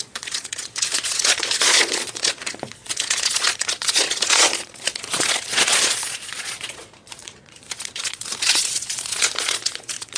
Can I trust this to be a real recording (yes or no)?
no